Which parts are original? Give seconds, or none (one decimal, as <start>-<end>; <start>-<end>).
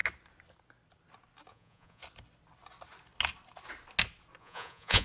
0.0-1.5; 2.0-4.4